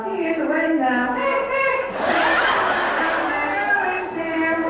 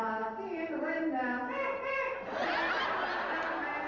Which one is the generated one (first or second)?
first